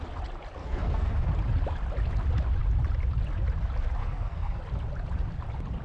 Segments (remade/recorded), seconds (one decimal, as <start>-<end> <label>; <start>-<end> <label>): 0.0-0.6 recorded; 0.6-1.3 remade; 1.3-4.0 recorded; 4.0-4.6 remade; 4.6-5.8 recorded